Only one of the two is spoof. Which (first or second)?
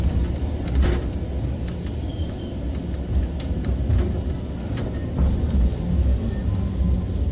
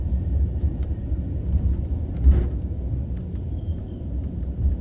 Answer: second